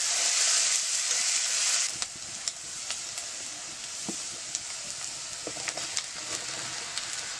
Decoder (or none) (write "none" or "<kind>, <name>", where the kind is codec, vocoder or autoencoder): none